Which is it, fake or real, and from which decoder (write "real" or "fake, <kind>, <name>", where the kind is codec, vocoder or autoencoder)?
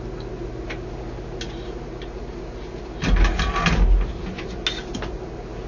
real